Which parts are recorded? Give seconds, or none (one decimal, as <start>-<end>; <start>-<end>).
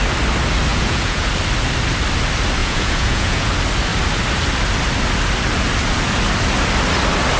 0.0-0.7; 1.3-2.6; 3.5-7.4